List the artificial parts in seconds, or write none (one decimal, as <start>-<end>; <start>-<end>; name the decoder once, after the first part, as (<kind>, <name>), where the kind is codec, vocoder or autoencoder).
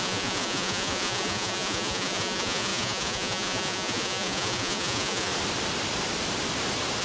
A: 0.0-5.3 (vocoder, Vocos)